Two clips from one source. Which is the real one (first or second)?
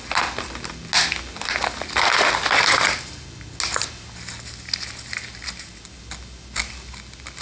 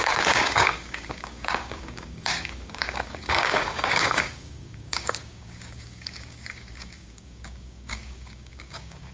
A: first